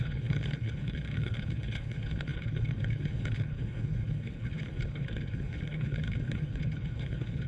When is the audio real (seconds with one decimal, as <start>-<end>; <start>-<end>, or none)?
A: none